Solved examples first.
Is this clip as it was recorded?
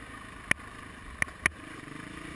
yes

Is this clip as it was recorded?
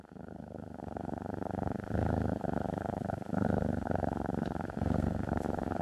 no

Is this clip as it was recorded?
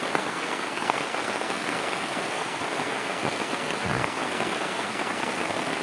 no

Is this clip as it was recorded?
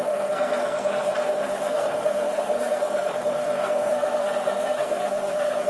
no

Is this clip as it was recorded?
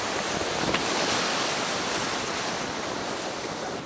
yes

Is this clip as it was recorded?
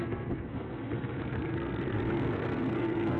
no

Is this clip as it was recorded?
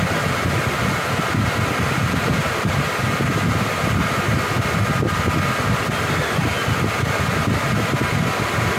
yes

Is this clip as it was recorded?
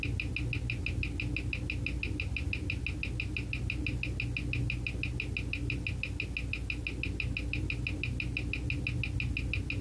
yes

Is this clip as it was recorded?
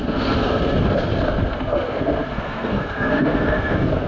no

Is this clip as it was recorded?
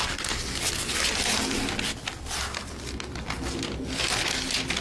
yes